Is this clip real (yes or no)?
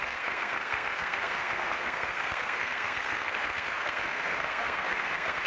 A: no